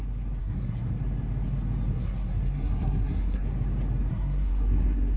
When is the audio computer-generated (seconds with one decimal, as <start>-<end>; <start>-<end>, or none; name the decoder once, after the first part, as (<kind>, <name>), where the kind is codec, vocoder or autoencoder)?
0.4-1.0 (codec, SNAC); 1.9-3.5; 4.1-5.2

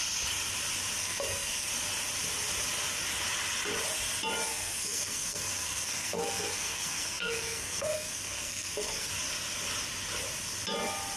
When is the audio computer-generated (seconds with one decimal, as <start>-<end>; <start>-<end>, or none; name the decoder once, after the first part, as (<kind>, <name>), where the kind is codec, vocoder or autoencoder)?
1.0-1.7 (codec, SNAC); 4.5-9.1

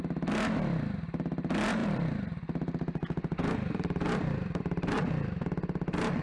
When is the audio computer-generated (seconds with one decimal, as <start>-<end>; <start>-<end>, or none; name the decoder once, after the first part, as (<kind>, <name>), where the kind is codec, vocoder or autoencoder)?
1.8-5.0 (vocoder, BigVGAN v2)

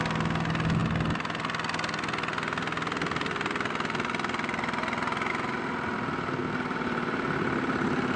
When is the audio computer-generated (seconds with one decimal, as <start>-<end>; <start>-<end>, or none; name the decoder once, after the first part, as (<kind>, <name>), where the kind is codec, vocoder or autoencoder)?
none

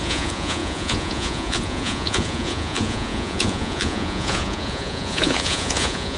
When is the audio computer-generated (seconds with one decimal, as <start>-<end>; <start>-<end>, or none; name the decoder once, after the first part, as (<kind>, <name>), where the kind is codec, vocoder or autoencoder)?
0.0-6.2 (vocoder, Vocos)